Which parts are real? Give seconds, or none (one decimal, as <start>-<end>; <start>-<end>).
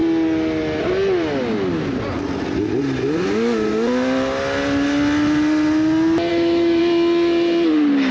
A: 0.0-6.3; 6.8-8.1